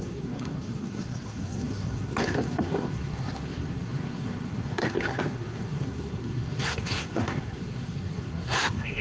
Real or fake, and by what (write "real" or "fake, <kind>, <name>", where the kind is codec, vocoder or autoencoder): fake, codec, SNAC